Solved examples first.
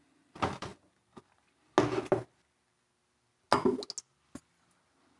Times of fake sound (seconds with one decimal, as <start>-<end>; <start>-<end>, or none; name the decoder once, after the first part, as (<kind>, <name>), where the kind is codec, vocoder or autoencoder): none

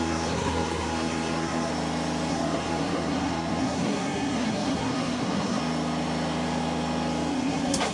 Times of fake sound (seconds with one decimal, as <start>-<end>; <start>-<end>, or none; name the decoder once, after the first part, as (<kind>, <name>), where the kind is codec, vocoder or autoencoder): 0.0-1.7 (codec, SNAC); 2.3-5.6; 7.3-7.9

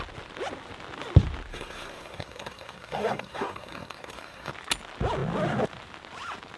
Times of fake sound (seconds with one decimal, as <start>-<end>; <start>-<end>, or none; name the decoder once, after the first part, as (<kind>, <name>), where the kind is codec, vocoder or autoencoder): 1.5-4.5 (codec, SNAC)